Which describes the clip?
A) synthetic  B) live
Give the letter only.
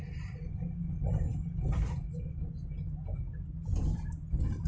B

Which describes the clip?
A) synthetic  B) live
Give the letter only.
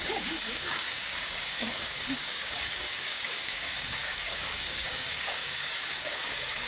A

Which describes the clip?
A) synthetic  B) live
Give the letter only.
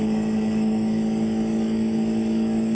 A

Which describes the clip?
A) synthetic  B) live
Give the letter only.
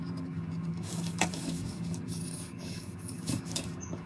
A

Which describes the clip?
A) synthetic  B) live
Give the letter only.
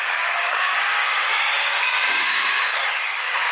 A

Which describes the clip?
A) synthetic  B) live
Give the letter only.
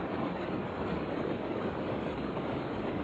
A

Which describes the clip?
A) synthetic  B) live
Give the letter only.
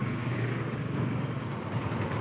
A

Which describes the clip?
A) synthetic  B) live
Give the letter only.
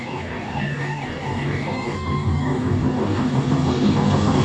A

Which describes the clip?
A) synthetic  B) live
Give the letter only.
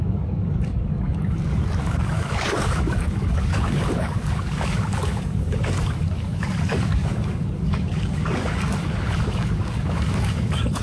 A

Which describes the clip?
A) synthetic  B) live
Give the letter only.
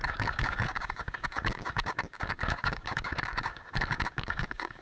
A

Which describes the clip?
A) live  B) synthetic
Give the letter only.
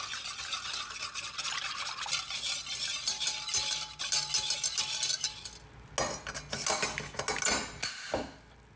A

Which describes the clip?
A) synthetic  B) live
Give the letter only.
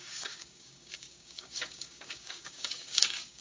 A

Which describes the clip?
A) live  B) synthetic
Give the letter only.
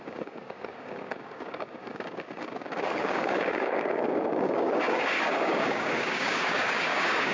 B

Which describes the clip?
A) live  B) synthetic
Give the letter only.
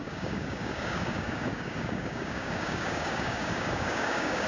B